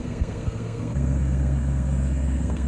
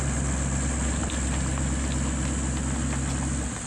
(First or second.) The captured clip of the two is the second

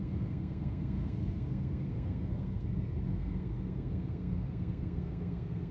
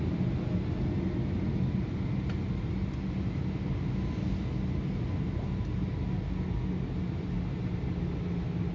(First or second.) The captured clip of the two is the second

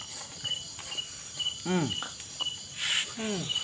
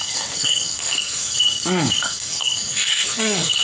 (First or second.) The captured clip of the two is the first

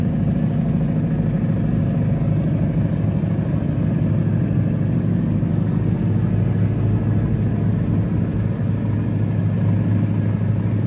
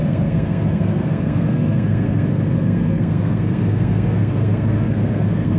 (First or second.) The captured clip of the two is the first